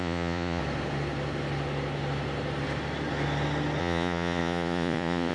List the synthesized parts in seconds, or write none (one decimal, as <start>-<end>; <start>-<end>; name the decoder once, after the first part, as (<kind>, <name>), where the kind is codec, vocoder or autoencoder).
0.0-0.6 (vocoder, Vocos); 3.8-5.3